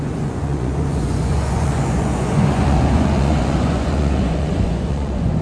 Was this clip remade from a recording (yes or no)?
yes